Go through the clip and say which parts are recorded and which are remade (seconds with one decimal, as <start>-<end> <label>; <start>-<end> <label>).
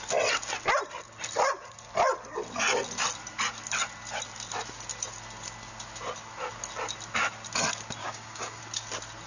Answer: 0.0-8.0 recorded; 8.0-8.6 remade; 8.6-9.3 recorded